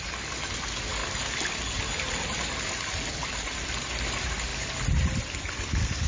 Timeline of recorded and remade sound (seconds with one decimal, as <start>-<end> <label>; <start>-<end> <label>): 0.0-3.2 recorded; 3.2-3.9 remade; 3.9-6.1 recorded